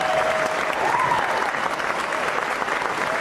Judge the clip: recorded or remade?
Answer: recorded